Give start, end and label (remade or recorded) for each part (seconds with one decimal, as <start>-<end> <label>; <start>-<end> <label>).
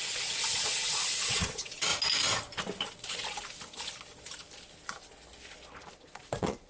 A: 0.0-1.9 remade; 1.9-5.9 recorded; 5.9-6.7 remade